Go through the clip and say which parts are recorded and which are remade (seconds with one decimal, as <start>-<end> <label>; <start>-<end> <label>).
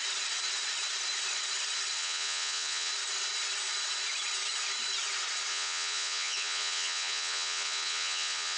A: 0.0-2.0 recorded; 2.0-2.9 remade; 2.9-5.5 recorded; 5.5-8.6 remade